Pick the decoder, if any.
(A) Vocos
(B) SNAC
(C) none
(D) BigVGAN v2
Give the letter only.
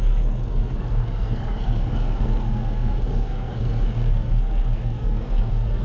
B